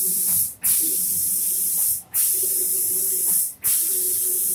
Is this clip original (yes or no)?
yes